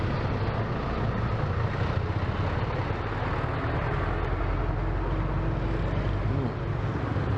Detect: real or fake real